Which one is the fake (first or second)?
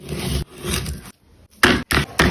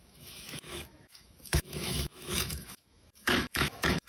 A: second